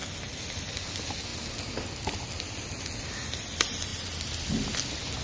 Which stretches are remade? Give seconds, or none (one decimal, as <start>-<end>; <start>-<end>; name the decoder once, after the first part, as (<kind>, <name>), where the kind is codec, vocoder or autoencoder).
none